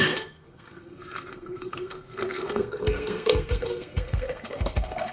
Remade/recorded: remade